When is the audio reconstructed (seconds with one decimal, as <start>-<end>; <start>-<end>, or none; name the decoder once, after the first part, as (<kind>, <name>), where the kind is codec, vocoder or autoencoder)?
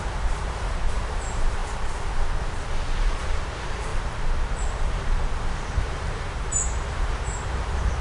0.0-1.6 (vocoder, BigVGAN v2); 3.0-8.0